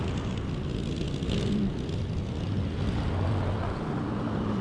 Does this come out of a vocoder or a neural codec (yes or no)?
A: no